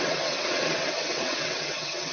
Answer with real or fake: fake